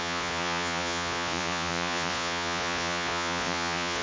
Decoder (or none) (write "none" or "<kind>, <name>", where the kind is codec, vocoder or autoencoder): vocoder, Vocos